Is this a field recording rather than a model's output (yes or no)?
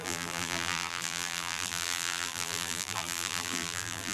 no